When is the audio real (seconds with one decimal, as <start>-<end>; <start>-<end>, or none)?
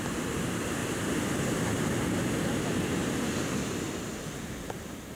0.8-1.5; 3.0-4.7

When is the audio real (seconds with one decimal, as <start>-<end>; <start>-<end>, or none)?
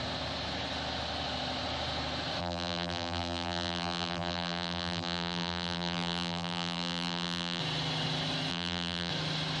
0.0-2.4; 7.6-8.5; 9.1-9.6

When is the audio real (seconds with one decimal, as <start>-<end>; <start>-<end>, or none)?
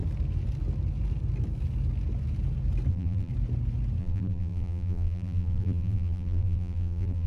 0.0-2.9; 3.3-4.0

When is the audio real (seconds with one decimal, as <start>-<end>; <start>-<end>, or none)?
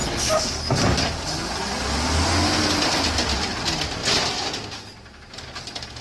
0.0-6.0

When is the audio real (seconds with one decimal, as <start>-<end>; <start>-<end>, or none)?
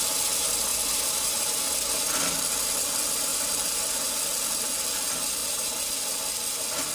0.0-0.7; 1.4-3.3; 4.1-5.4; 5.9-6.9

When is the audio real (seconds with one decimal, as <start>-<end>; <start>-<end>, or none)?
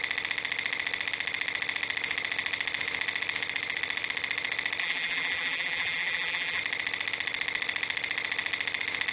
0.0-4.8; 6.6-9.1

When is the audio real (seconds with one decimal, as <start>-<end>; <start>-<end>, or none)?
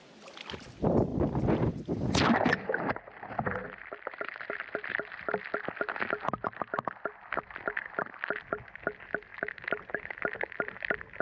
0.0-1.1; 5.4-11.2